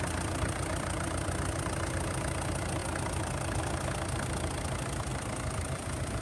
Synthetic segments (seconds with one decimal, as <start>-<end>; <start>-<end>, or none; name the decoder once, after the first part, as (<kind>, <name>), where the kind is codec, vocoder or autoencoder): 5.1-6.2 (vocoder, BigVGAN v2)